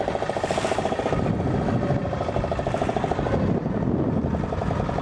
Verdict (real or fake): real